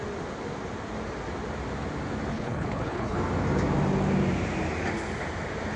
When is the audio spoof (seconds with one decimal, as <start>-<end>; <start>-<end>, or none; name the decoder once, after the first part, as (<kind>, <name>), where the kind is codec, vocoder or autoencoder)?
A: 2.3-3.2 (codec, HILCodec)